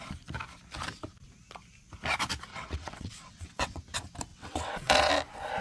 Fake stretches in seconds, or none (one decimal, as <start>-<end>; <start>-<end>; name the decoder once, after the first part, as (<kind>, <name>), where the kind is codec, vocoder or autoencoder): 2.5-3.8 (vocoder, WaveNeXt); 4.3-5.1